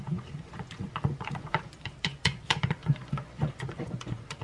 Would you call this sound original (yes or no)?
no